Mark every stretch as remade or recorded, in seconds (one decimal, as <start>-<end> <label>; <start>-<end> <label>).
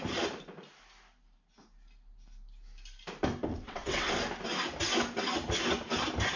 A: 0.0-3.5 recorded; 3.5-4.1 remade; 4.1-6.4 recorded